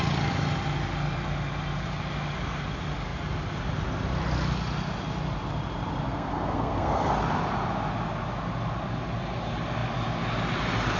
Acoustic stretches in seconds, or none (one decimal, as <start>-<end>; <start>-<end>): 0.0-6.1; 7.1-11.0